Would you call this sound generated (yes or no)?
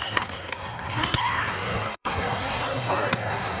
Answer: yes